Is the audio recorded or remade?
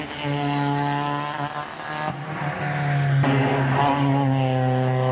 recorded